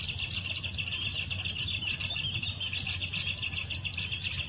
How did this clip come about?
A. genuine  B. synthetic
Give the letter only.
A